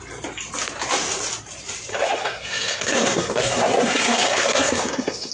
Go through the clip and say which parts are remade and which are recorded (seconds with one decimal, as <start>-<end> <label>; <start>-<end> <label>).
0.0-1.9 recorded; 1.9-5.3 remade